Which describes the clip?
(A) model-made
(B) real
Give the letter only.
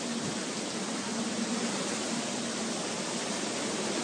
B